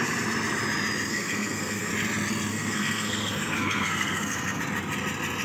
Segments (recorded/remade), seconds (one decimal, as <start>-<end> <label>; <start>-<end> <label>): 0.0-1.1 recorded; 1.1-1.9 remade; 1.9-2.5 recorded; 2.5-4.6 remade; 4.6-5.4 recorded